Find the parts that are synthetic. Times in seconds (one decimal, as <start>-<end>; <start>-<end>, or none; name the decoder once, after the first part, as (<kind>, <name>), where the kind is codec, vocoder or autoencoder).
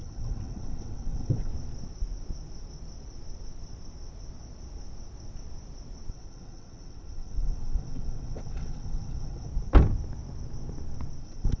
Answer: 0.0-1.5 (vocoder, WaveNeXt); 6.1-9.5; 11.2-11.6